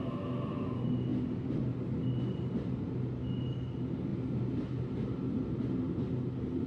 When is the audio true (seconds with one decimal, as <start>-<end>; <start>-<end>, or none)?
0.0-6.7